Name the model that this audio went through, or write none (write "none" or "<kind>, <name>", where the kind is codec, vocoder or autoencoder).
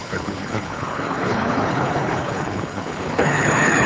codec, HILCodec